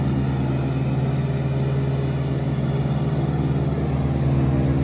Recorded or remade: recorded